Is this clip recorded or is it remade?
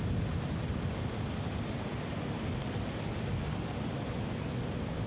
recorded